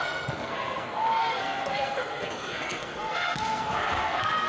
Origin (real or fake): fake